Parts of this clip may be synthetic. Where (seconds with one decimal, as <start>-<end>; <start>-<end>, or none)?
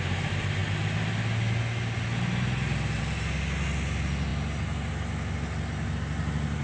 none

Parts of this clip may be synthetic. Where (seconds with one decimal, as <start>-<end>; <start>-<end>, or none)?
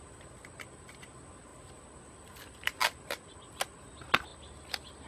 none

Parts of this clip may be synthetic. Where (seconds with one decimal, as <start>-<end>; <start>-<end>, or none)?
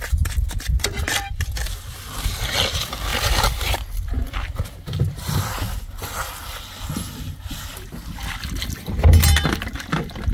3.1-5.1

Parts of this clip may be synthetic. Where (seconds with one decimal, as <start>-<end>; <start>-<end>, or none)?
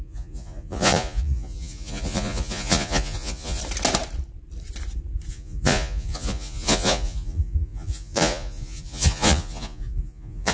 0.0-3.6; 5.3-10.5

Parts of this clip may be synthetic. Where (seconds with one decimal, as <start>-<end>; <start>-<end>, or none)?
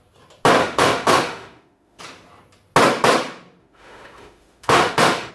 0.6-2.0; 3.6-5.3